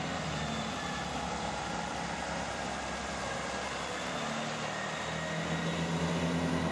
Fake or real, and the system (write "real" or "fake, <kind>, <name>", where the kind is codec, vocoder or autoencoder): real